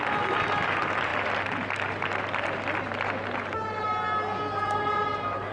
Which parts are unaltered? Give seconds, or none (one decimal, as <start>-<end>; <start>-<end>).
0.0-5.5